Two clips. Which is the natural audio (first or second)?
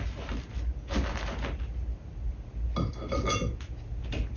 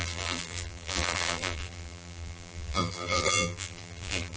first